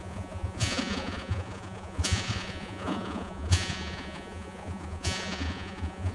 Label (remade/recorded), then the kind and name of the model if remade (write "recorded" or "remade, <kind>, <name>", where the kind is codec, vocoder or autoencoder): remade, vocoder, Vocos